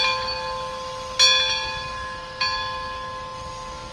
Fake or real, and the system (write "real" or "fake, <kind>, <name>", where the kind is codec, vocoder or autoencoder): real